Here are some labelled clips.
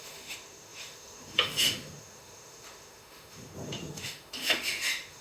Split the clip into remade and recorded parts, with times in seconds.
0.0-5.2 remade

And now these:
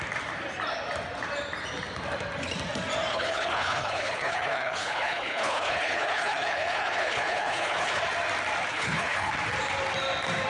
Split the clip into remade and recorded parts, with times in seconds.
0.0-3.1 recorded; 3.1-8.0 remade; 8.0-8.7 recorded; 8.7-9.3 remade; 9.3-10.5 recorded

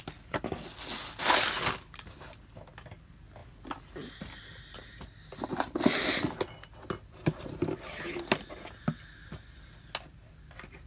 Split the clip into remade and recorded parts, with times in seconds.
0.0-10.9 recorded

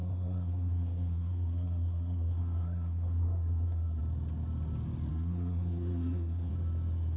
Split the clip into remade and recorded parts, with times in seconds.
0.0-4.0 remade; 4.0-5.1 recorded; 5.1-6.5 remade; 6.5-7.2 recorded

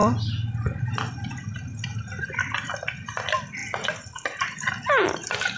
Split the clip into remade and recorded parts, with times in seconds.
0.0-5.6 recorded

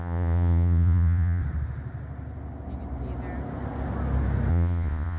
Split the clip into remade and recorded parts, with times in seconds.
0.0-1.4 remade; 1.4-4.5 recorded; 4.5-5.2 remade